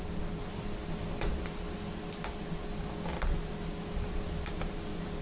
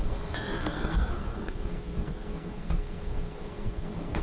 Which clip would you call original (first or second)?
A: first